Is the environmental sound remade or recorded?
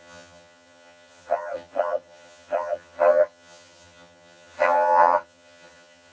remade